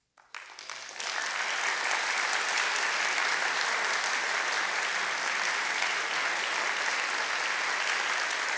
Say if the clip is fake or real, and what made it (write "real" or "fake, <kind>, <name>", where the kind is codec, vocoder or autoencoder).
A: real